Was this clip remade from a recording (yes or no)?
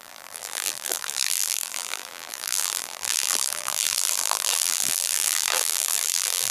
yes